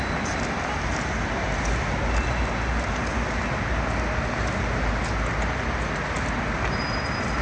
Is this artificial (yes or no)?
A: no